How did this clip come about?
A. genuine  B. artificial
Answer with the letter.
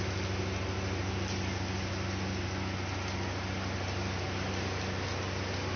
A